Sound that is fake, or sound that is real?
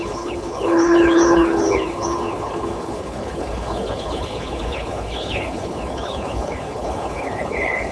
fake